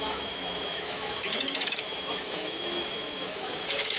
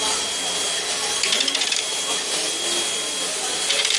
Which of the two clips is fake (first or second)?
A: first